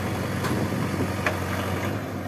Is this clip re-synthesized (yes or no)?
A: no